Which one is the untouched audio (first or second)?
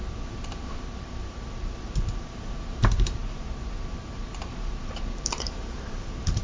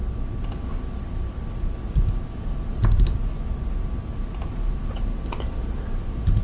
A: second